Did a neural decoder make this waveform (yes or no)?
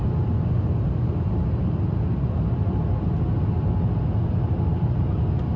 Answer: no